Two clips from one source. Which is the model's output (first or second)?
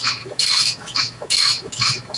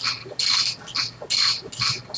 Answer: first